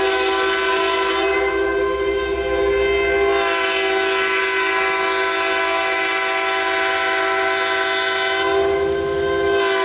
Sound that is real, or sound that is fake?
real